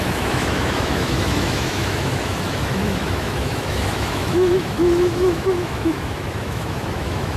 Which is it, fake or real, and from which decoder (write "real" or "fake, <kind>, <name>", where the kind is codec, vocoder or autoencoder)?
fake, autoencoder, DAC-VAE